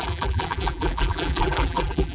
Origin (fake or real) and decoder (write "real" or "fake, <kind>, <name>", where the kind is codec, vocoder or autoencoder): fake, vocoder, BigVGAN v2